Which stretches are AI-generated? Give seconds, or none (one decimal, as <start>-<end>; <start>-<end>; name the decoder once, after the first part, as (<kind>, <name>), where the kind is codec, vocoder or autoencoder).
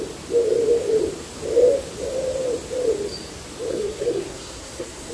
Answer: 3.7-5.1 (codec, SNAC)